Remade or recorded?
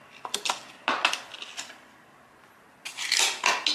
recorded